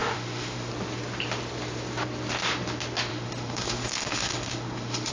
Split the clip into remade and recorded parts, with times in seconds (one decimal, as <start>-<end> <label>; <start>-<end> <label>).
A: 0.0-0.7 remade; 0.7-3.1 recorded; 3.1-5.1 remade